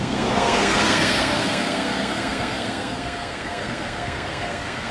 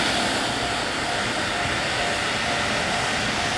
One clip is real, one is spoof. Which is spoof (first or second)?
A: first